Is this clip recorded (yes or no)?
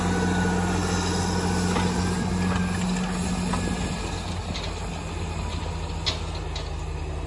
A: yes